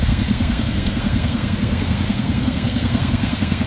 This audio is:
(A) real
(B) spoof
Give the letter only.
B